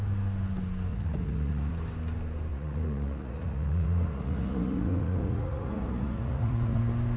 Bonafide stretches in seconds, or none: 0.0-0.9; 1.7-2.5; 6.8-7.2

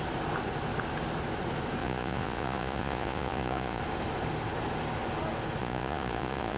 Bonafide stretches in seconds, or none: 0.0-1.8; 3.8-5.6

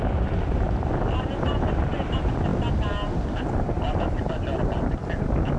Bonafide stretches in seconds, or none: 0.0-5.6

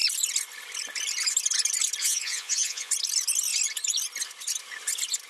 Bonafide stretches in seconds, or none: 0.0-2.0; 2.9-5.3

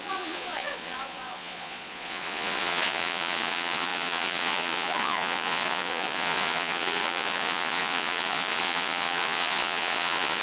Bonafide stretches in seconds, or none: none

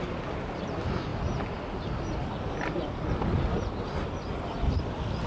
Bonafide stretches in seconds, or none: 0.0-5.3